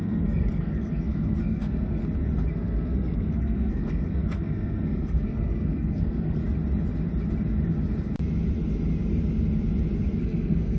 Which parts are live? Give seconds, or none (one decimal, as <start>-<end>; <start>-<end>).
2.0-2.5; 6.4-10.2